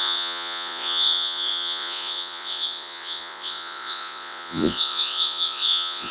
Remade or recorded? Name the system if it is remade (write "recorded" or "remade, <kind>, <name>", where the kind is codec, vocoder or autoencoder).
remade, vocoder, Vocos